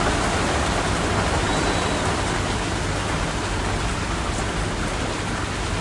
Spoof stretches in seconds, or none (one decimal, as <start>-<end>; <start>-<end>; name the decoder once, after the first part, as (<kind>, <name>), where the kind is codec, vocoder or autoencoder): none